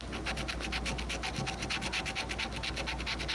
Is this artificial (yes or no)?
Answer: no